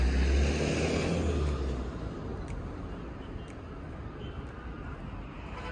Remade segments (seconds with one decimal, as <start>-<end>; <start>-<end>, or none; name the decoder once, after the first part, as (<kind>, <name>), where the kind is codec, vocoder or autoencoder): none